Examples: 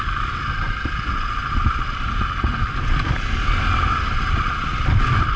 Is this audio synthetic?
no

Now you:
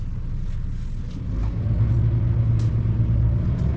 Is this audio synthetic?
no